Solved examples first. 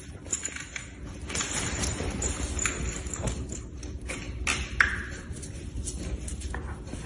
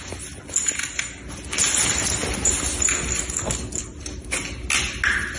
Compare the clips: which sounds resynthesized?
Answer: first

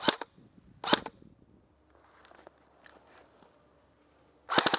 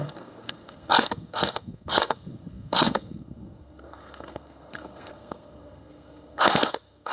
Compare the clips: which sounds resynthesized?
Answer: second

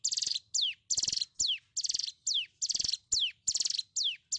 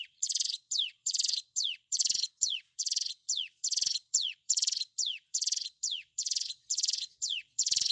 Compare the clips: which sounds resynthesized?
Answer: second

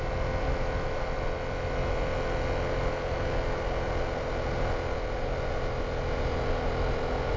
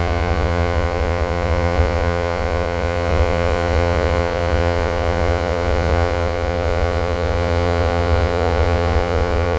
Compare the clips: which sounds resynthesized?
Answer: second